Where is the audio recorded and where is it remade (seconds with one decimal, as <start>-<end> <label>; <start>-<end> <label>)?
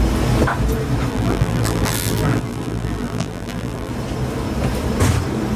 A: 0.0-1.1 recorded; 1.1-3.9 remade; 3.9-5.6 recorded